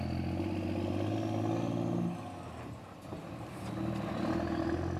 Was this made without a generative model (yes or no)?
yes